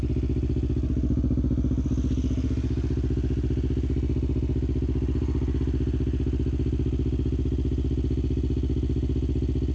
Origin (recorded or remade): recorded